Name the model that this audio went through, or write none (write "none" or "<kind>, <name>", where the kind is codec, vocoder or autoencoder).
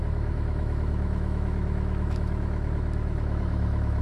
autoencoder, DAC-VAE